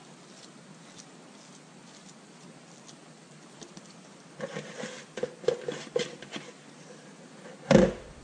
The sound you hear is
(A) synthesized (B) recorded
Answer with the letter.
B